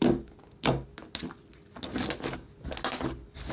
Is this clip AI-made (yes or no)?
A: no